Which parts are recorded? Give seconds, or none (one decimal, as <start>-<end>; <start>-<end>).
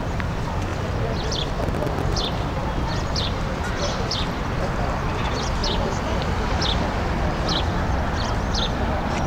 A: 5.6-7.7